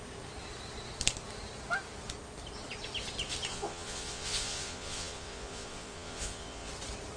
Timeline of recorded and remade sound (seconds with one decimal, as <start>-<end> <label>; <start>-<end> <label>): 0.0-3.5 recorded; 3.5-6.7 remade; 6.7-7.2 recorded